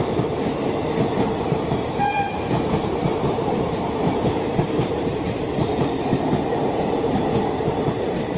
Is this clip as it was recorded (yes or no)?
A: no